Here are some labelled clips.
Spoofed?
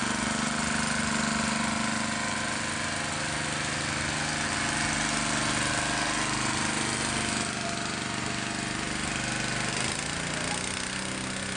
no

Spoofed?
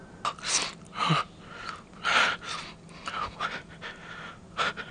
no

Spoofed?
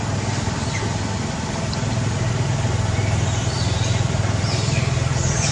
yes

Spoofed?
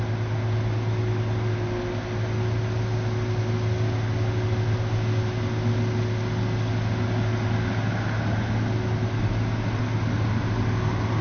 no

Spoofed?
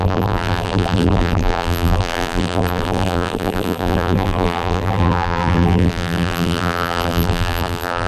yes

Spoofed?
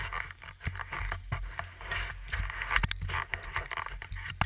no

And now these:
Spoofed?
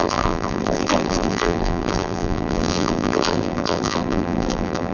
yes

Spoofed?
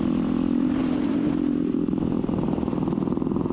yes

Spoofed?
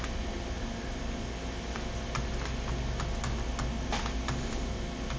yes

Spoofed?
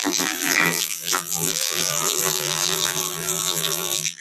yes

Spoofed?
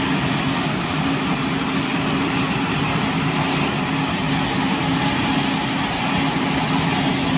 no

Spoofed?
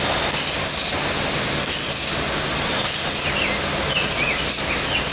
no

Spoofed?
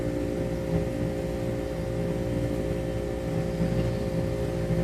no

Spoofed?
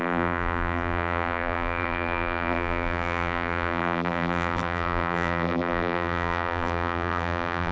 yes